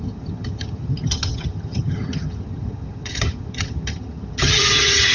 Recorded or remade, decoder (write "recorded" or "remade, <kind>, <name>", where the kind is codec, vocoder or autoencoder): remade, vocoder, HiFi-GAN